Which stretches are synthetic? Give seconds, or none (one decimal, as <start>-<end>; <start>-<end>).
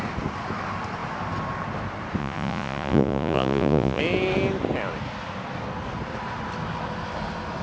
2.2-4.0